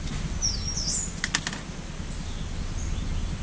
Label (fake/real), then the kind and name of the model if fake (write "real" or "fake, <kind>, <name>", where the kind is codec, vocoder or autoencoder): real